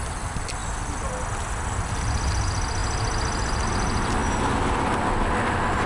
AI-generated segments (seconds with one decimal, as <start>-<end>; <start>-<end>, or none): none

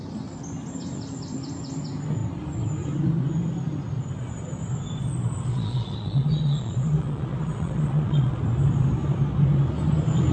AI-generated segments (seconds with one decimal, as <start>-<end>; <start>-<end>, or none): 5.5-8.4

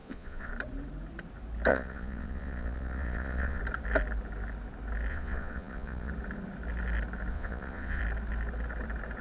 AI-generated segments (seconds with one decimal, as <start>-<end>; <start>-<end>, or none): 0.0-0.5; 1.7-3.6; 5.1-6.1; 7.3-8.0